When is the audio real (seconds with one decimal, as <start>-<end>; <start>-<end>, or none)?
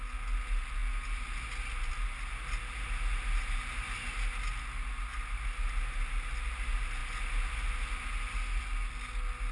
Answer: 0.0-9.5